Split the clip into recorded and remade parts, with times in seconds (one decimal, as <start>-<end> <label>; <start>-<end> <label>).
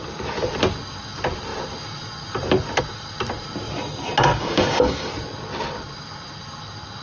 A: 0.0-4.3 recorded; 4.3-5.1 remade; 5.1-7.0 recorded